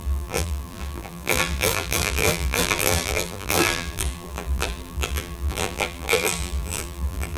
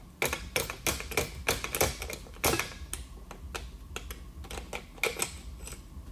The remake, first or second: first